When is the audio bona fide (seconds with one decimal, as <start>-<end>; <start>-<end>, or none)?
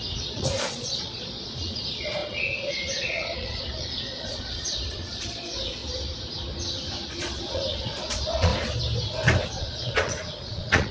5.8-7.1; 8.5-9.6